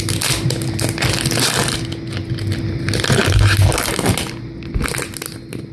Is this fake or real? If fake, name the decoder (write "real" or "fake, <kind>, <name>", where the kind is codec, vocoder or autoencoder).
real